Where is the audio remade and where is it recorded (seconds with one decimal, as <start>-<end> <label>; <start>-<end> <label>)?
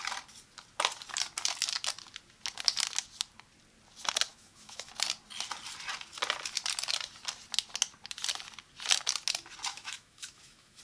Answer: 0.0-4.3 recorded; 4.3-4.9 remade; 4.9-9.7 recorded; 9.7-10.8 remade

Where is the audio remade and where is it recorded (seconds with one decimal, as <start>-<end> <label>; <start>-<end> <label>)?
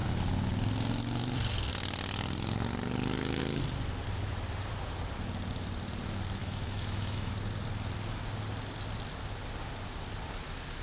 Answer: 0.0-6.4 recorded; 6.4-7.3 remade; 7.3-10.8 recorded